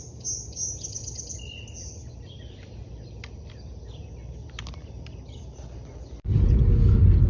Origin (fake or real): real